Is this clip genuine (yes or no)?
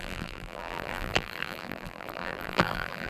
no